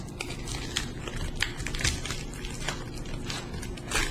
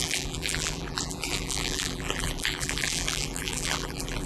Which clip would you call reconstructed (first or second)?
second